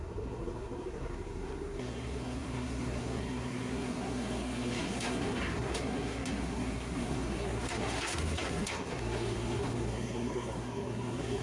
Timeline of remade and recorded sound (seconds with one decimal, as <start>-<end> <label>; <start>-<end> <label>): 0.0-11.4 remade